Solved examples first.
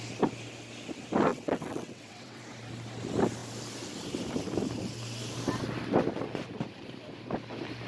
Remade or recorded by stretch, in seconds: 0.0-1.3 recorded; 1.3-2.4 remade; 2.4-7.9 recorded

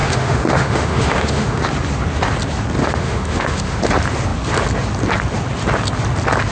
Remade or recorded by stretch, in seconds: 0.0-1.6 remade; 1.6-2.8 recorded; 2.8-3.8 remade; 3.8-6.5 recorded

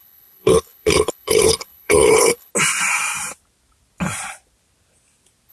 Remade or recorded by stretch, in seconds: 0.0-2.5 remade; 2.5-5.5 recorded

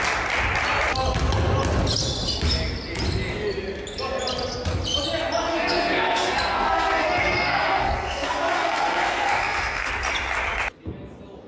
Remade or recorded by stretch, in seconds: 0.0-5.5 recorded; 5.5-9.9 remade; 9.9-11.5 recorded

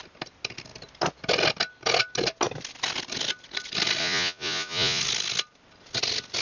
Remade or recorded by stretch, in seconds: 0.0-4.0 recorded; 4.0-5.0 remade; 5.0-6.4 recorded

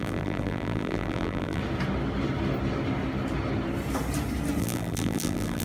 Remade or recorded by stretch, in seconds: 0.0-1.6 remade; 1.6-4.6 recorded; 4.6-5.6 remade

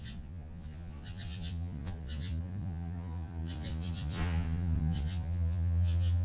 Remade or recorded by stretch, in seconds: 0.0-6.2 remade

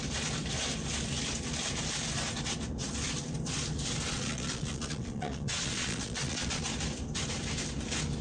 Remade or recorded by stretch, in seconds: 0.0-4.1 recorded; 4.1-6.6 remade; 6.6-8.2 recorded